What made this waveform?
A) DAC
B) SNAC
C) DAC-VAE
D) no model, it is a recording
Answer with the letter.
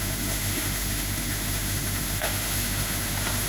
C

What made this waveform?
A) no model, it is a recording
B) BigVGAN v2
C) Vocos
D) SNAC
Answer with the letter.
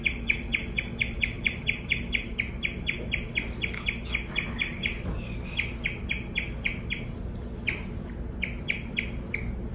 A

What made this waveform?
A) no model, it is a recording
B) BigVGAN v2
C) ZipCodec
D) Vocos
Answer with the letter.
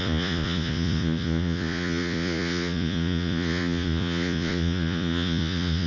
D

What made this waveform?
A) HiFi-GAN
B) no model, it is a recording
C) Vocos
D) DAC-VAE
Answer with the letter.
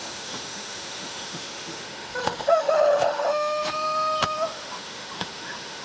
D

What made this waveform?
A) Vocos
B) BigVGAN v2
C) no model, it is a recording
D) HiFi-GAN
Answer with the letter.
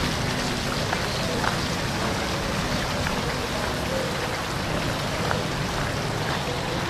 C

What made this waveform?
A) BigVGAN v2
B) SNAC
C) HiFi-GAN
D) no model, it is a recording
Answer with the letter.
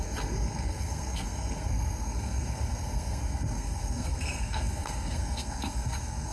B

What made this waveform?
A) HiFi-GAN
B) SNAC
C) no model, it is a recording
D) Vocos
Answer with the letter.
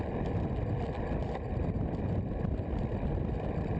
C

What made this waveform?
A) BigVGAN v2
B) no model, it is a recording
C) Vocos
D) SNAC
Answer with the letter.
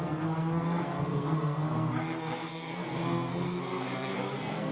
D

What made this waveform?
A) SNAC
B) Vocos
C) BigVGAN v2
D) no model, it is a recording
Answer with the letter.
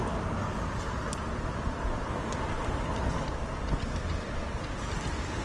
D